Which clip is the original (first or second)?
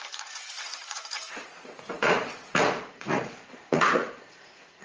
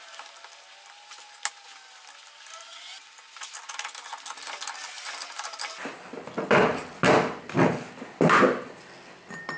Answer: second